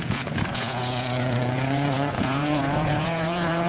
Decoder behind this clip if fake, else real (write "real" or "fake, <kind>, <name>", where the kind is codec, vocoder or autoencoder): fake, vocoder, Vocos